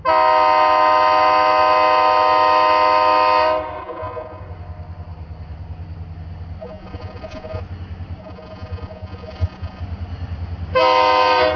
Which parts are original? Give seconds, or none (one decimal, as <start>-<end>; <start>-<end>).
0.0-3.8; 4.4-6.6; 7.6-8.2; 9.8-11.6